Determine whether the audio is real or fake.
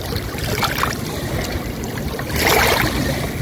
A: fake